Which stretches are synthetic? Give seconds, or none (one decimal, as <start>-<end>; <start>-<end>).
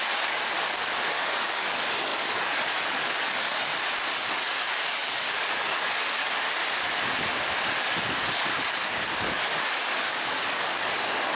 0.0-3.7; 4.3-6.6; 7.7-11.3